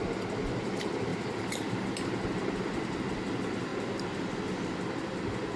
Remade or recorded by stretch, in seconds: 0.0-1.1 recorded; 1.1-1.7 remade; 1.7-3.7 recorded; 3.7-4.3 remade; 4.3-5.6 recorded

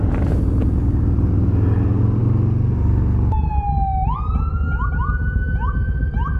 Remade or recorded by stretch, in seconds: 0.0-6.4 recorded

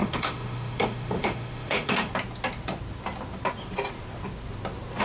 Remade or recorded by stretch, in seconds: 0.0-2.1 remade; 2.1-5.0 recorded

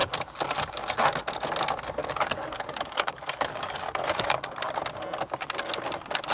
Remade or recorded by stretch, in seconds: 0.0-0.9 remade; 0.9-2.0 recorded; 2.0-4.5 remade; 4.5-6.3 recorded

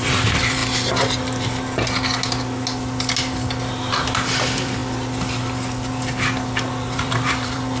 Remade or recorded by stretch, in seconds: 0.0-0.6 remade; 0.6-3.9 recorded; 3.9-4.8 remade; 4.8-6.7 recorded; 6.7-7.8 remade

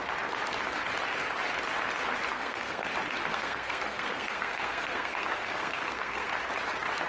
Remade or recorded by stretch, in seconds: 0.0-2.3 recorded; 2.3-2.9 remade; 2.9-3.3 recorded; 3.3-6.3 remade; 6.3-7.1 recorded

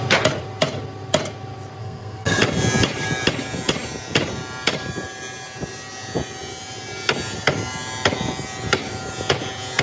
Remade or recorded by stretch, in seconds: 0.0-1.8 recorded; 1.8-2.4 remade; 2.4-9.8 recorded